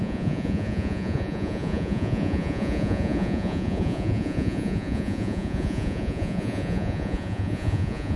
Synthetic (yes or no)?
yes